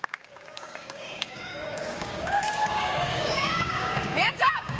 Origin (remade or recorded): remade